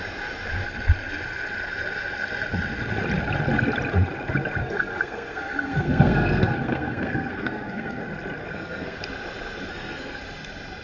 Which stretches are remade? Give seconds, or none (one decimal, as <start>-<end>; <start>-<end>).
4.6-8.0; 8.4-9.0; 9.7-10.2